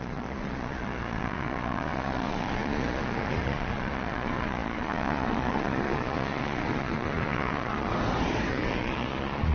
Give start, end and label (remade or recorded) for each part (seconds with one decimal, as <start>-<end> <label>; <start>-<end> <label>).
0.0-7.9 remade; 7.9-8.5 recorded; 8.5-9.5 remade